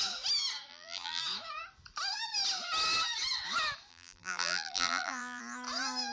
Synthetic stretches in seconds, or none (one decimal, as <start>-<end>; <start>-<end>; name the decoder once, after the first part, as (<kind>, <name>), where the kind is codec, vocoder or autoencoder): 0.7-1.2 (vocoder, BigVGAN v2); 3.9-5.4